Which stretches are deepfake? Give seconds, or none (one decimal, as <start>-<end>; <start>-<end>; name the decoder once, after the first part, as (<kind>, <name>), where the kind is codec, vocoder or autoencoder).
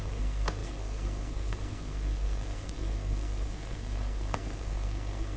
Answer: 0.0-5.4 (codec, SNAC)